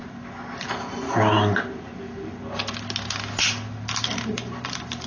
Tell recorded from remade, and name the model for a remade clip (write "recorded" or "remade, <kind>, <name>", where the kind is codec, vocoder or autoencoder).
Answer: recorded